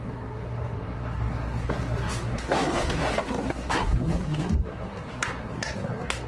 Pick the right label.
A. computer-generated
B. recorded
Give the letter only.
A